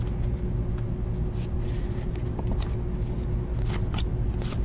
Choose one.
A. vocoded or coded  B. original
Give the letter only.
B